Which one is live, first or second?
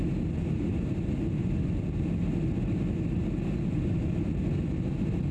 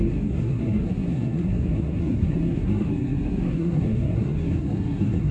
first